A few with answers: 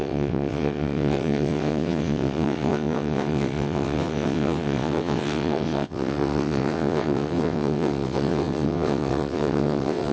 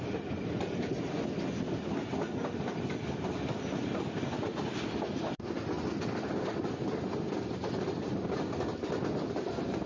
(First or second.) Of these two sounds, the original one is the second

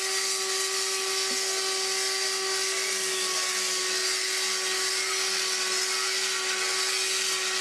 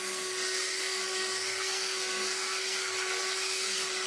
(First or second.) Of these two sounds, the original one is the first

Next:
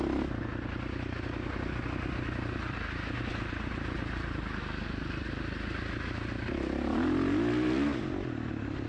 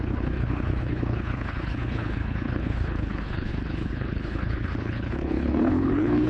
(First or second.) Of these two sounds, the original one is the first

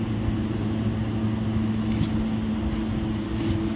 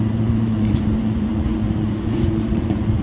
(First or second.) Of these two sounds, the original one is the first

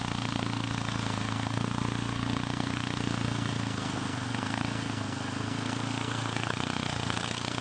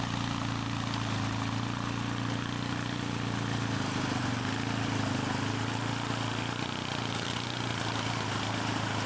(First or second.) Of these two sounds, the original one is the second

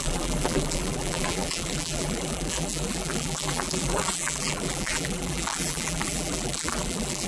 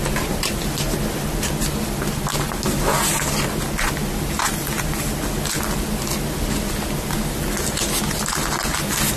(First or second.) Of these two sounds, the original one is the second